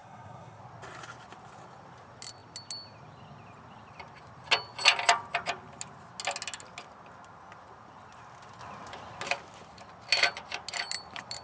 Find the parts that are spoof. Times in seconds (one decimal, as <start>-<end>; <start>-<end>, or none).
0.0-0.6